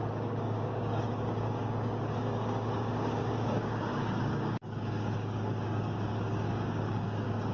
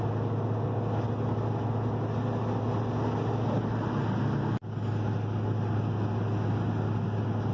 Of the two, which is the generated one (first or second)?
first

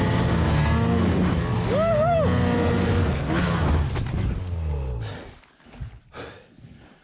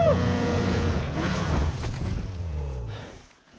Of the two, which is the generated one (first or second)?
second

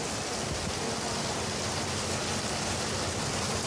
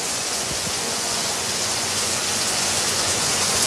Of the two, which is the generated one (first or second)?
second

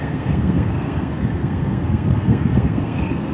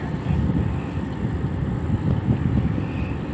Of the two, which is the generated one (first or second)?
first